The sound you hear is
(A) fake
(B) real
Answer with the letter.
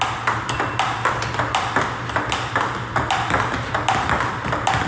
B